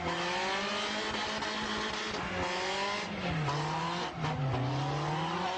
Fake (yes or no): no